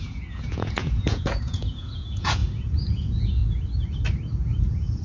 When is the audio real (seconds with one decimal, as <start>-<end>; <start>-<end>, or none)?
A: 3.4-4.6